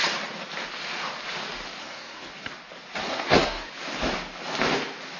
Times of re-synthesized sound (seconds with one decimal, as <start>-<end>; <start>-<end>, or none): 1.8-2.3; 3.1-3.7